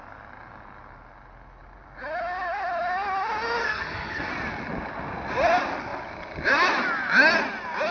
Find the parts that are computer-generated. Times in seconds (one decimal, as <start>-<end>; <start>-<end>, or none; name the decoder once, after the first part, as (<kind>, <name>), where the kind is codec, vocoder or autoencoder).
3.6-4.3 (codec, SNAC)